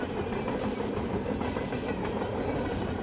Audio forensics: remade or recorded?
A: recorded